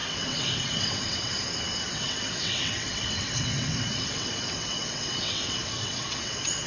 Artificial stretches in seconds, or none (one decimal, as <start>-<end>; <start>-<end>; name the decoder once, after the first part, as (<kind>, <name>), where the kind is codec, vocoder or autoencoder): 0.0-1.3 (vocoder, WaveNeXt); 1.9-6.7